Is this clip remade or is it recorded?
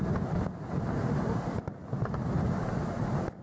recorded